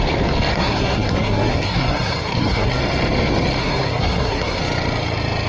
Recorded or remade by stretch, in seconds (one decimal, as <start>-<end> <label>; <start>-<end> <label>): 0.0-0.5 recorded; 0.5-2.8 remade; 2.8-3.6 recorded; 3.6-4.6 remade; 4.6-5.5 recorded